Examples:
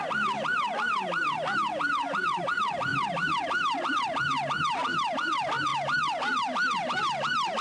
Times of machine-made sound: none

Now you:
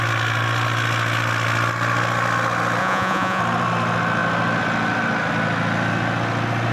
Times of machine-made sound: 2.8-3.4 (vocoder, Vocos)

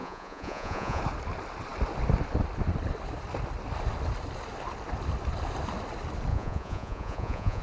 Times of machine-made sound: 0.0-1.0 (vocoder, Vocos); 6.3-7.6

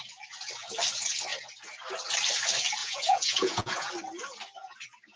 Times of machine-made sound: 2.8-3.9 (vocoder, Vocos)

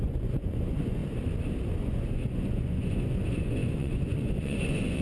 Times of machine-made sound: 0.0-1.0 (vocoder, Vocos); 1.8-5.0

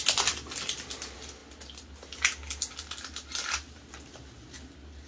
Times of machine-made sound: none

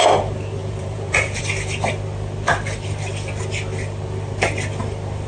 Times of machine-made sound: 0.6-1.4 (vocoder, Vocos)

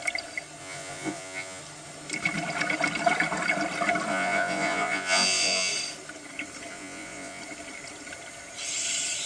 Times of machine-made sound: 0.6-1.6 (vocoder, Vocos); 4.1-5.7; 6.7-7.4